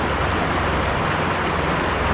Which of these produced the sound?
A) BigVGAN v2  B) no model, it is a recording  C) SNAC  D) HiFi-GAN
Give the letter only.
B